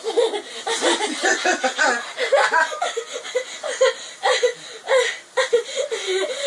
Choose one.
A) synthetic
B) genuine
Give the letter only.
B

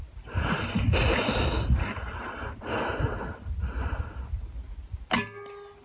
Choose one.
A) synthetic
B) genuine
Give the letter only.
B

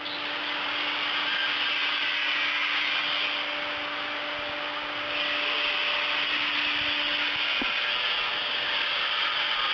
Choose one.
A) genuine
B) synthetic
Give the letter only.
A